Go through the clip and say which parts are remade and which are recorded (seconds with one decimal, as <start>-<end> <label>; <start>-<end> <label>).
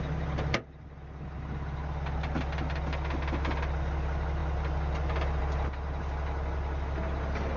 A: 0.0-7.6 recorded